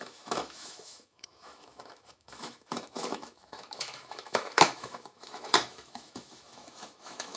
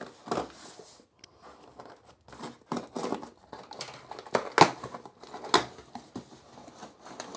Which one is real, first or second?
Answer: second